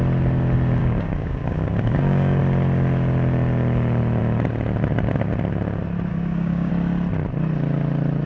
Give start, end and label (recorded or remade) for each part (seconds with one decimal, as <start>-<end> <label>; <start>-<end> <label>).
0.0-0.8 recorded; 0.8-2.4 remade; 2.4-6.1 recorded; 6.1-6.7 remade; 6.7-8.3 recorded